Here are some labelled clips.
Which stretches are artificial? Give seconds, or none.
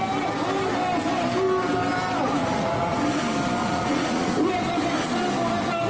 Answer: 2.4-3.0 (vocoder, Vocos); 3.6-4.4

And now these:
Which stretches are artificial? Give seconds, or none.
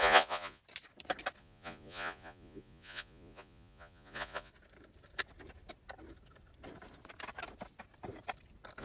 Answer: 0.0-0.6 (vocoder, Vocos); 1.4-4.5